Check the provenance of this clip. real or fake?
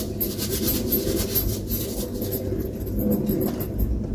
real